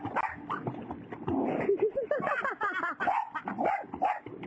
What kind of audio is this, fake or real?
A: real